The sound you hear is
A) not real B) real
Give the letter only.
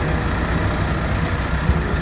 B